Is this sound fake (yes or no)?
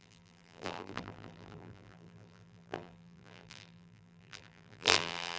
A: yes